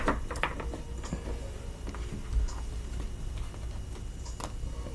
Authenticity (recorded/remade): recorded